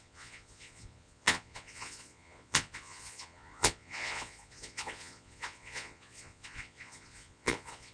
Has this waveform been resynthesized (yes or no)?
yes